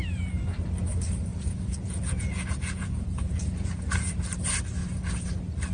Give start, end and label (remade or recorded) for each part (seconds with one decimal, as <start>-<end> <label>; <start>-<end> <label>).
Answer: 0.0-1.3 recorded; 1.3-4.1 remade; 4.1-5.7 recorded